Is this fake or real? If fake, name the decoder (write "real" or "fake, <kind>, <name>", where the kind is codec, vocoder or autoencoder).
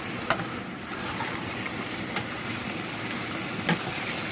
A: real